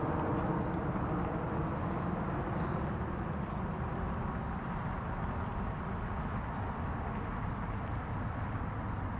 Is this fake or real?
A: real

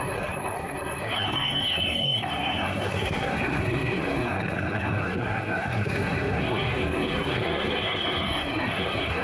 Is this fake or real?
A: fake